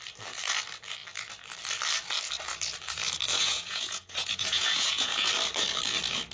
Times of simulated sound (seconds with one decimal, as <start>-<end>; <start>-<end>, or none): 3.3-5.3